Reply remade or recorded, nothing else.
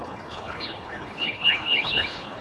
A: remade